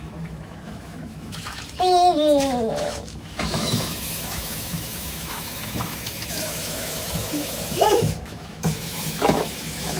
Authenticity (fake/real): fake